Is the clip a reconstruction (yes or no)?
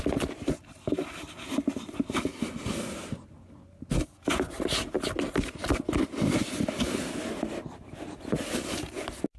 no